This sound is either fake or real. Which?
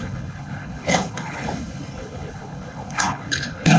fake